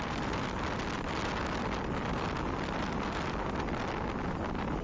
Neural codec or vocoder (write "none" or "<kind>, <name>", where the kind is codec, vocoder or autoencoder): none